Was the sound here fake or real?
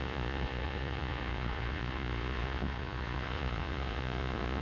fake